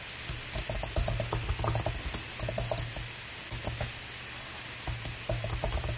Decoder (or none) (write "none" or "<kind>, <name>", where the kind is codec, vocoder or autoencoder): none